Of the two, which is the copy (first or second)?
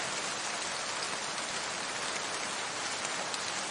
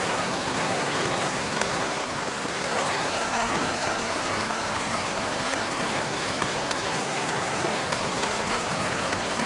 second